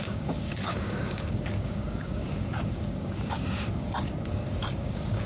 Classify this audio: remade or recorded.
remade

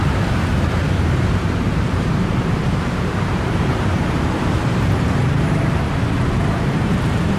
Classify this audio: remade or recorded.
remade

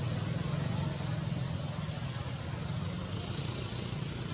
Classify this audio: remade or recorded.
recorded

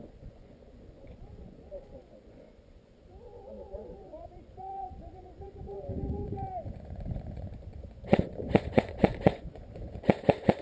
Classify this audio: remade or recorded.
remade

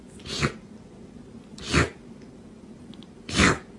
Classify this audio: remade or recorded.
recorded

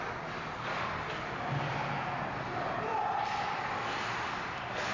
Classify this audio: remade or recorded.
recorded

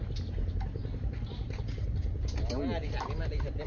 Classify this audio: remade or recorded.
recorded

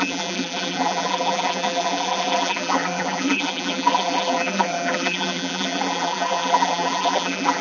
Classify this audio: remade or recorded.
remade